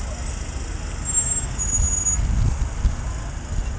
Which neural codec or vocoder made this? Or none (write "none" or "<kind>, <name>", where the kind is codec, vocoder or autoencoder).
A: none